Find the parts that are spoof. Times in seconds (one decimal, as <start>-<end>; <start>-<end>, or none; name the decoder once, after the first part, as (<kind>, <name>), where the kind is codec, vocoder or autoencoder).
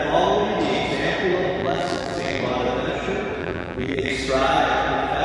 1.6-2.4 (vocoder, BigVGAN v2); 3.4-4.1